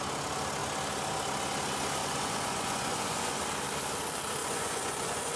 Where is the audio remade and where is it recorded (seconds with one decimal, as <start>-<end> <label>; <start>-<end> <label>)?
0.0-2.0 recorded; 2.0-3.4 remade; 3.4-4.4 recorded; 4.4-5.4 remade